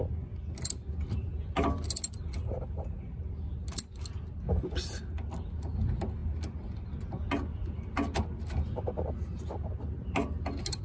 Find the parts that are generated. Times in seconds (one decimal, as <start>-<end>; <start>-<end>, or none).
none